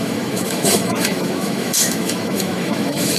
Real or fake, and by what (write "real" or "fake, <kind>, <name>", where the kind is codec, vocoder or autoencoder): fake, autoencoder, DAC-VAE